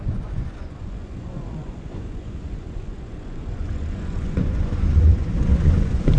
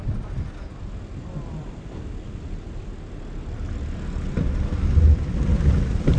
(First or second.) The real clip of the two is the second